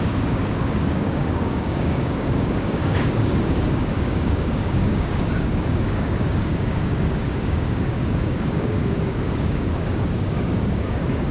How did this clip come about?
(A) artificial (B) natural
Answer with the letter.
A